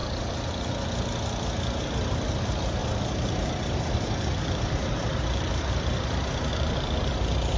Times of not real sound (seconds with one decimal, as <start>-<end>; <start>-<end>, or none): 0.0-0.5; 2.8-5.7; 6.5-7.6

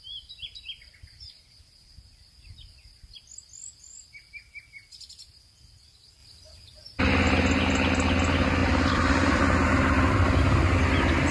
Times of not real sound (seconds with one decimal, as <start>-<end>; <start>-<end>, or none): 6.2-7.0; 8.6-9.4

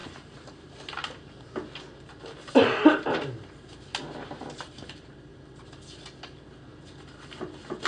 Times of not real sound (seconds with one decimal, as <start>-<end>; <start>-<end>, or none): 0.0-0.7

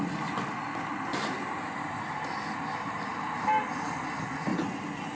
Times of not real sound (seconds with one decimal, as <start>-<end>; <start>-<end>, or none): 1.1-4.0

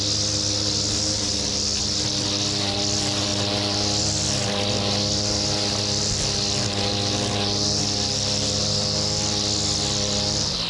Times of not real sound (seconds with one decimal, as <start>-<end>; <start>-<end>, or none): none

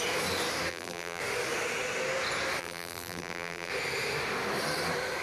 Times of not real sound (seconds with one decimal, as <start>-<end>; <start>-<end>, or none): 0.7-1.2; 2.6-3.7